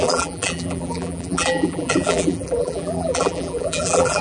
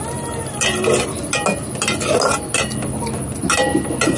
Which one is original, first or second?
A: second